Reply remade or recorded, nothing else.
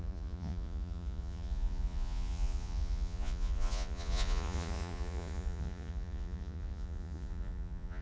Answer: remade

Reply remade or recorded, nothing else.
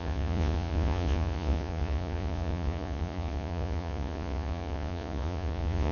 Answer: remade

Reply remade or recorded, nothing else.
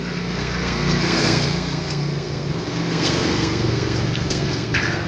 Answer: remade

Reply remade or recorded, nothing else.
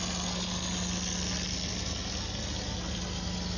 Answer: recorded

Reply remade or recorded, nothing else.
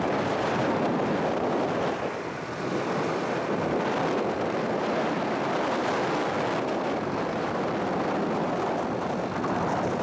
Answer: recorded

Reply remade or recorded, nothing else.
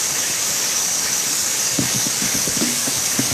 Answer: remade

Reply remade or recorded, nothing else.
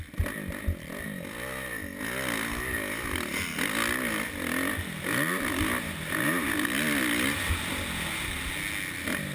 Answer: recorded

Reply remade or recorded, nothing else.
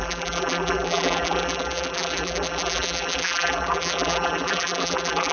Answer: remade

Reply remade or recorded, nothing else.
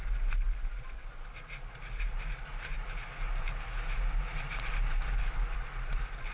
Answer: recorded